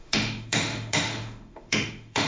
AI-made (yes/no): yes